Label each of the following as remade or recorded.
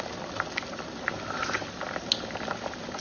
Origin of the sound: recorded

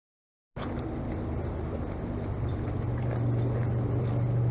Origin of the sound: recorded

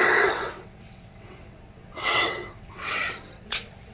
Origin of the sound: remade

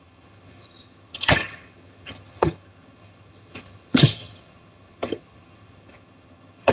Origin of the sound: remade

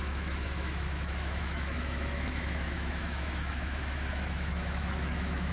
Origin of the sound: remade